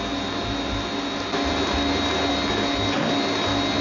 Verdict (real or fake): real